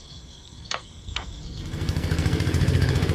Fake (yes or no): yes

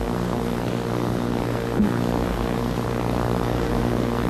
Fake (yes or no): yes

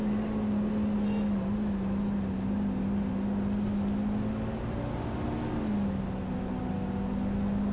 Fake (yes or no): no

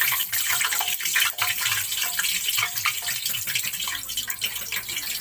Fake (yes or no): no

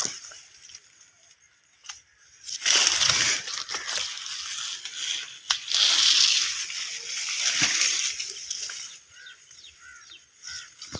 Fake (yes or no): no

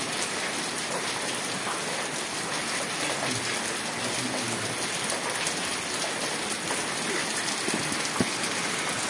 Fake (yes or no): no